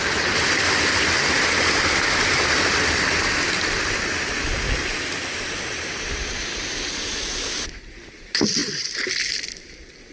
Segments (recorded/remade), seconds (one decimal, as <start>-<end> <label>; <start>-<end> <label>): 0.0-10.1 recorded